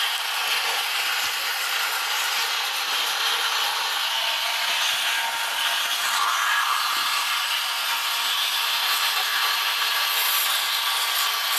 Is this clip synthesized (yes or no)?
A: no